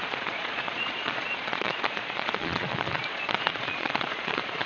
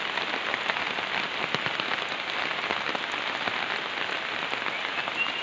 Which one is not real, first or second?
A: first